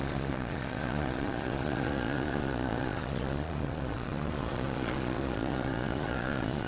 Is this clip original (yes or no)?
no